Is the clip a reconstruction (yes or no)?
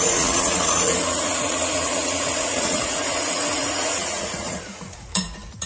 yes